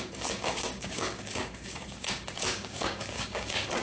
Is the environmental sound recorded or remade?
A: remade